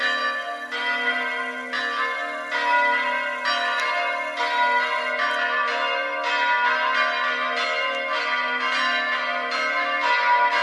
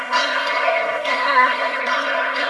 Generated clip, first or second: second